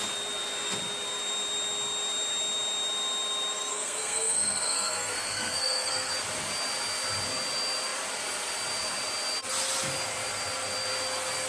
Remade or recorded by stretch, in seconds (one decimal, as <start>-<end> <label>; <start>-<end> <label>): 0.0-3.7 recorded; 3.7-6.1 remade; 6.1-11.5 recorded